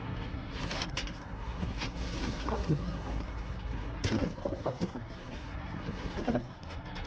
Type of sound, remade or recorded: remade